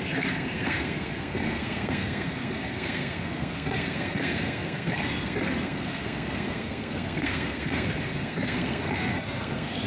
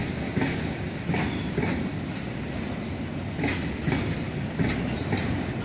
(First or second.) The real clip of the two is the second